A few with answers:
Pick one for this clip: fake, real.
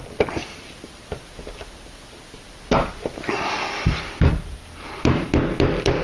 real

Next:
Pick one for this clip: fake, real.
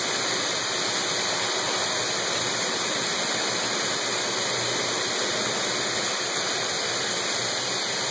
real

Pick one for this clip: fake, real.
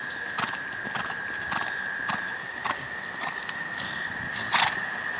fake